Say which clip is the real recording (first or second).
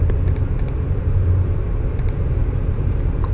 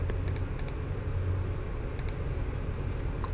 second